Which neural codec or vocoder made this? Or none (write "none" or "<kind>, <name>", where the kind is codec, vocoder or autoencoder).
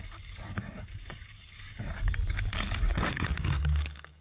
codec, DAC